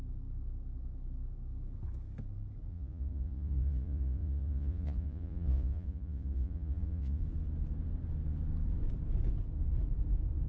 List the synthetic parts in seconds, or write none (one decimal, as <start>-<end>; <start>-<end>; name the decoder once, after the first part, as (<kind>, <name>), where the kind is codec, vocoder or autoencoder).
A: 2.7-7.2 (vocoder, Vocos)

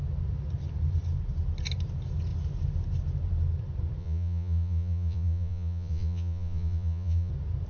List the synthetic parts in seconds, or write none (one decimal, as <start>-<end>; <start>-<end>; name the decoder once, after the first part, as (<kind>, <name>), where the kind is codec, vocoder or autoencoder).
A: 4.0-7.3 (vocoder, Vocos)

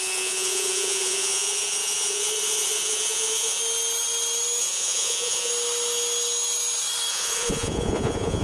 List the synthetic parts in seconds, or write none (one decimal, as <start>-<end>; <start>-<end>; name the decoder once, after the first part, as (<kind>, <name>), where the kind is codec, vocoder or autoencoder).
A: 0.0-3.6 (vocoder, Vocos); 4.6-5.5; 7.1-8.4

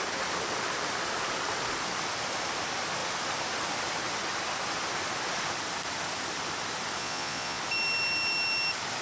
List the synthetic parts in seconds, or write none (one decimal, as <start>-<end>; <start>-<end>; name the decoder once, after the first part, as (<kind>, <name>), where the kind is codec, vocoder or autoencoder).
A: 7.0-7.6 (vocoder, Vocos)

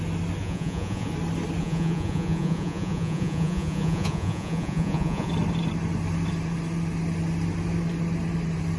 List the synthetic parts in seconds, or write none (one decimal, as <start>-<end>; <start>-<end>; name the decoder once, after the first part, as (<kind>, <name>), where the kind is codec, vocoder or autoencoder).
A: 0.4-1.1 (vocoder, Vocos); 1.6-5.3

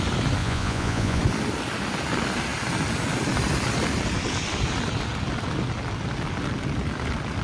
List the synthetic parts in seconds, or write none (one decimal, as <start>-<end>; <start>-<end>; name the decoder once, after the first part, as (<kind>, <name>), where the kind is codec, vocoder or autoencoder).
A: 0.4-1.2 (vocoder, Vocos)